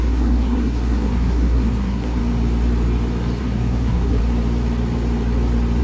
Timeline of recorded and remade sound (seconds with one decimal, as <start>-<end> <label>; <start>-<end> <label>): 0.0-2.2 remade; 2.2-3.4 recorded; 3.4-4.2 remade; 4.2-5.8 recorded